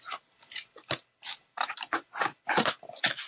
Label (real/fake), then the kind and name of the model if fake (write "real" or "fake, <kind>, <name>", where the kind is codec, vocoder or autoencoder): real